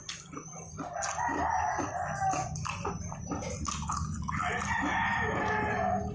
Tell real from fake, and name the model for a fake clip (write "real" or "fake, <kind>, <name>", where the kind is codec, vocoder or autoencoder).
real